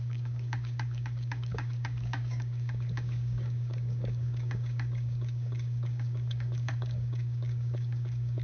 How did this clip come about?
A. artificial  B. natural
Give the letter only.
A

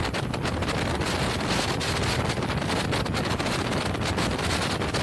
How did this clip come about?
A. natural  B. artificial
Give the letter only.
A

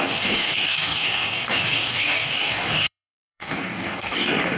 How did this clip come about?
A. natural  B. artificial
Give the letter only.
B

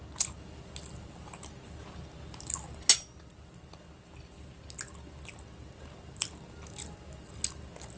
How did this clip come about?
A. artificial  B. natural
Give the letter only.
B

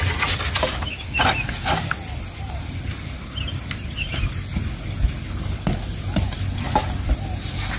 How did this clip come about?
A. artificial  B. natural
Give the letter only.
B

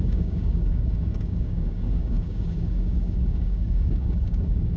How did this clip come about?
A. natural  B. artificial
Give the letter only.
B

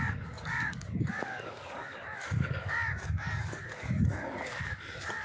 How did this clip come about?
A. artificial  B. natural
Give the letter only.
A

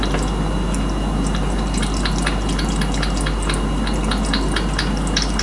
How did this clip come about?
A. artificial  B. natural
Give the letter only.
B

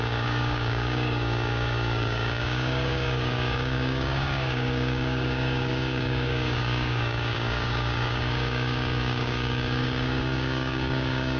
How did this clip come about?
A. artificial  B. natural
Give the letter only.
A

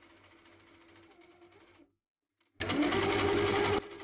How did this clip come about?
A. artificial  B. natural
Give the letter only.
B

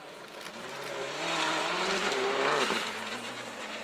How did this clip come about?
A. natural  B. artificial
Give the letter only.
A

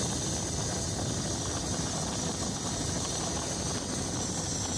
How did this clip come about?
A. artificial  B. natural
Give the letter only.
B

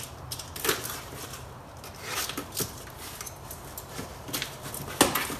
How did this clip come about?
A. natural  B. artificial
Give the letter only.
A